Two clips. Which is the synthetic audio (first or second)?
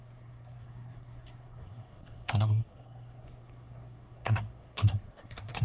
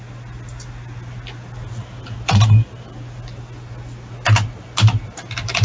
first